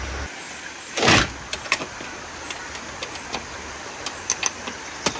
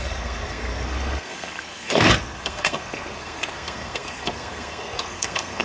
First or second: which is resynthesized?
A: second